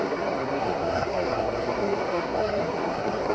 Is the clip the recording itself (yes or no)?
no